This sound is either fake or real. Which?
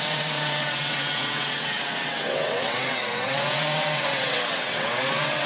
fake